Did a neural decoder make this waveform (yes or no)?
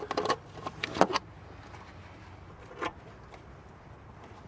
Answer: no